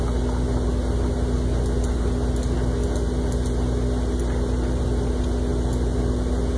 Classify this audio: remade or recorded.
recorded